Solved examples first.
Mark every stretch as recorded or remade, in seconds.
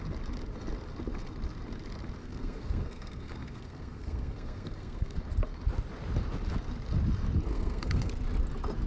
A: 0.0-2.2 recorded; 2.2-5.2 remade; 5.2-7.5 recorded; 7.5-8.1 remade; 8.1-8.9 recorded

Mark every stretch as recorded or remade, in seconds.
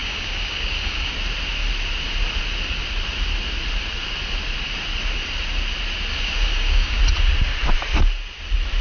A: 0.0-1.1 remade; 1.1-6.1 recorded; 6.1-7.0 remade; 7.0-8.8 recorded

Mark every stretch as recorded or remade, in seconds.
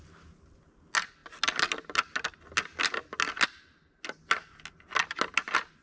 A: 0.0-5.8 recorded